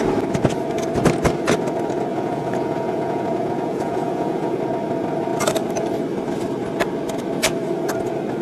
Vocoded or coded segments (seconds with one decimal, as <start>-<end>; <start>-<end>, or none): 2.1-4.6